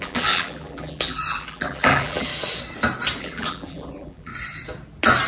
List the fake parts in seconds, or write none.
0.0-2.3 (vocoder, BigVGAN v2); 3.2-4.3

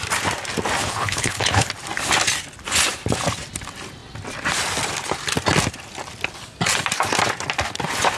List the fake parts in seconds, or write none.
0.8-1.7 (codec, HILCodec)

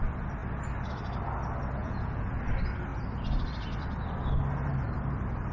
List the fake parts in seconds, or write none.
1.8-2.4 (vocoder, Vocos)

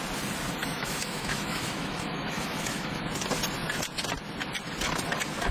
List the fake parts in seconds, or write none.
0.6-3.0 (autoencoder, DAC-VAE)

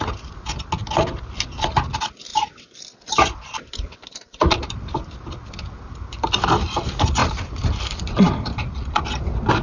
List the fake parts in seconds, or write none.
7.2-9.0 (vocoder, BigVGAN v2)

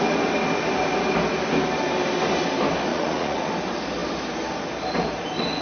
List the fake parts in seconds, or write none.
2.9-3.5 (vocoder, Vocos)